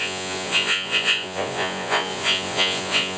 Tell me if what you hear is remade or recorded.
remade